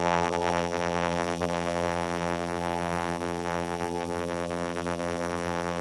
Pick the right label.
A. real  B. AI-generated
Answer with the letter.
B